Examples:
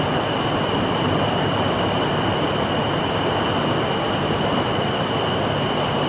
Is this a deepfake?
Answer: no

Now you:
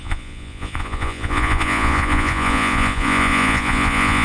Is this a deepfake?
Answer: yes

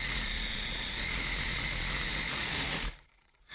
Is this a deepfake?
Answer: yes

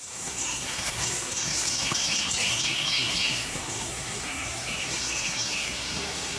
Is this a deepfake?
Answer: yes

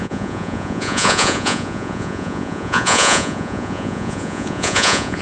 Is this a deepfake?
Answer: yes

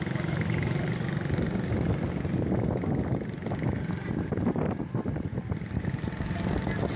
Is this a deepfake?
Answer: no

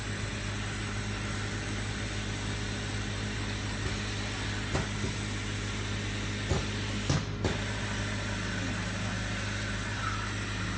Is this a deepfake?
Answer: no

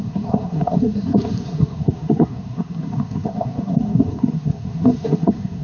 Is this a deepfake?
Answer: yes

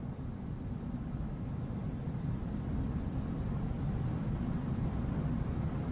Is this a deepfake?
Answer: yes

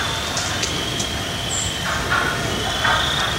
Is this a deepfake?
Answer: no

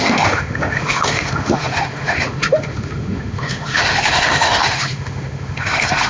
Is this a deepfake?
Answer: yes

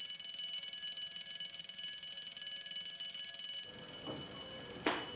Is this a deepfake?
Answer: no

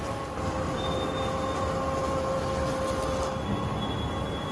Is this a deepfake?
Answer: no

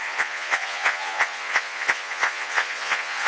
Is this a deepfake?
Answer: yes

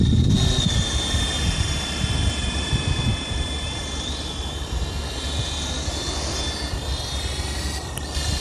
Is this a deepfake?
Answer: no